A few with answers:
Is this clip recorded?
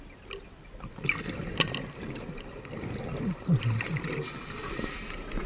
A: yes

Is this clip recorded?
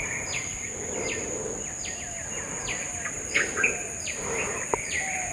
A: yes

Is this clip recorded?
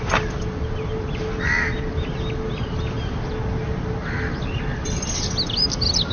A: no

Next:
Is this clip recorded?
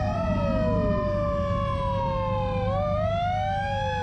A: yes